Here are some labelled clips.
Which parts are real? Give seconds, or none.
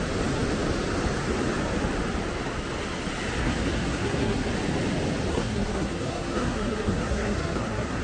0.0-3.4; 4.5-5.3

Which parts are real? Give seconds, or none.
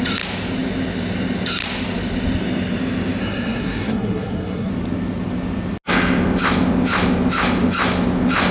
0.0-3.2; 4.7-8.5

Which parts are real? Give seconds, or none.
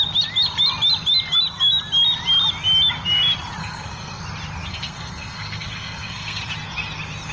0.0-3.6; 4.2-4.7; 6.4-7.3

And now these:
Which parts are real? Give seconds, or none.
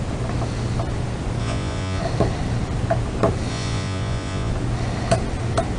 0.0-1.4; 2.0-3.5; 4.5-5.8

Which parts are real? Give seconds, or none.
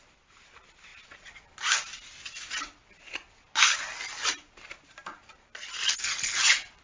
0.0-6.8